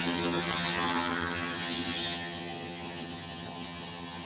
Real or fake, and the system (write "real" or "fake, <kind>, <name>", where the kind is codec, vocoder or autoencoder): fake, vocoder, HiFi-GAN